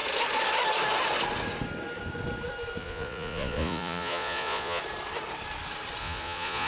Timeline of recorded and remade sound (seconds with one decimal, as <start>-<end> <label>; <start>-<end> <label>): 0.0-2.8 recorded; 2.8-4.8 remade; 4.8-6.0 recorded; 6.0-6.7 remade